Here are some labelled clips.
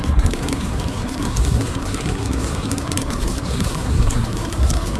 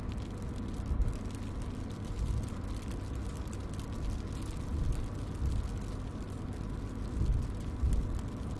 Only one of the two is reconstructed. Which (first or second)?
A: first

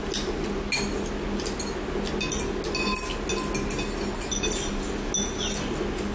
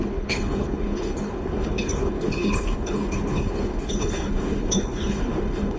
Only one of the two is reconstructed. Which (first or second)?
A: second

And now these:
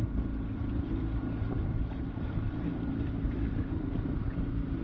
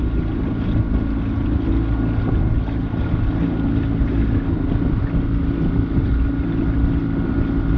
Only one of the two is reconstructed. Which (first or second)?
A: first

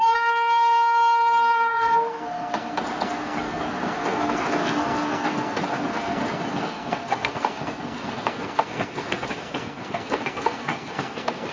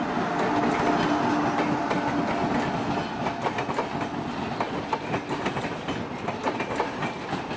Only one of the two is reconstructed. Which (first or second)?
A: first